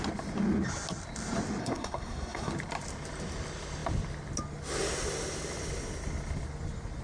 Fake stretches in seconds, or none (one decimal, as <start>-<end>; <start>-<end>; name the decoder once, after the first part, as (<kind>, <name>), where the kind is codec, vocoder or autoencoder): 1.6-2.5 (codec, SNAC)